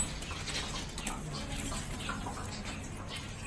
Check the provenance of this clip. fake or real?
real